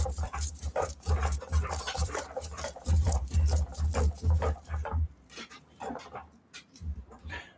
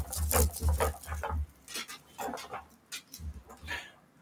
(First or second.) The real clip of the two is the second